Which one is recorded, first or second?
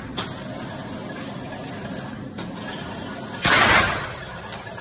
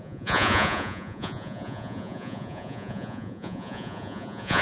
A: first